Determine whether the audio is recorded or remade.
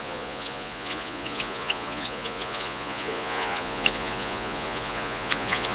remade